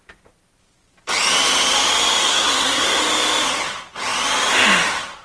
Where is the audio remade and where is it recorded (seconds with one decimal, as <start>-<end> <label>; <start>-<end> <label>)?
0.0-2.2 recorded; 2.2-3.0 remade; 3.0-5.2 recorded